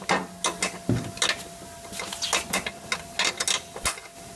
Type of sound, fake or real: real